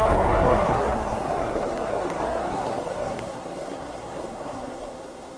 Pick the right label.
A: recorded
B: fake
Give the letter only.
B